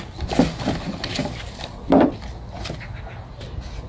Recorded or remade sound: recorded